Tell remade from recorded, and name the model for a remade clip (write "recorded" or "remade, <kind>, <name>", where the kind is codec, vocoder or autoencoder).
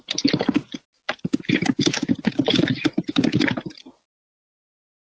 recorded